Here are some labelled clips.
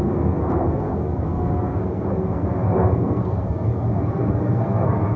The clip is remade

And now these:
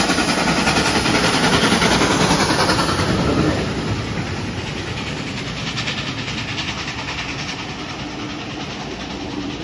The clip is recorded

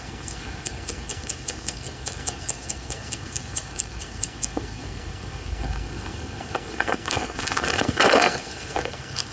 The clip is remade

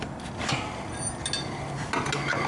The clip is recorded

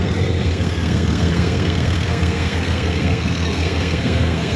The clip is remade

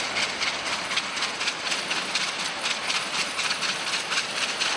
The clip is recorded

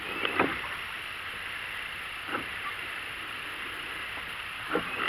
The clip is recorded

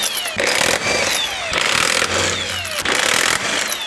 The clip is recorded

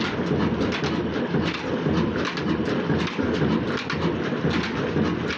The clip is recorded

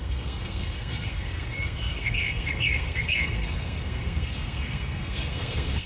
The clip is remade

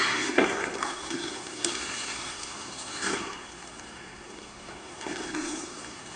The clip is remade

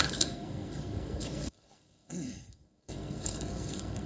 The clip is remade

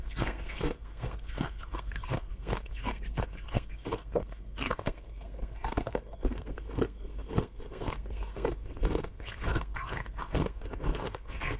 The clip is remade